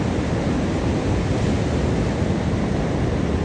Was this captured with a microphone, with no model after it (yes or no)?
yes